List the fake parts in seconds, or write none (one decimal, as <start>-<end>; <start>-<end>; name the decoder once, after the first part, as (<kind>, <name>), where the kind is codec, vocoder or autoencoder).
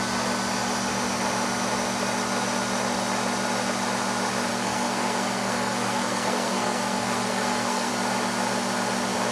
4.5-7.9 (codec, SNAC)